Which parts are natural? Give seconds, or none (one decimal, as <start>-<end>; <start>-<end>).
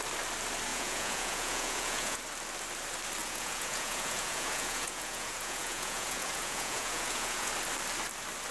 0.0-0.7; 2.2-3.2; 7.5-8.5